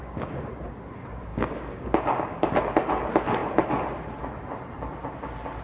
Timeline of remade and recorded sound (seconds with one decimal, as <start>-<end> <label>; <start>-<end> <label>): 0.0-0.5 remade; 0.5-1.3 recorded; 1.3-2.6 remade; 2.6-5.6 recorded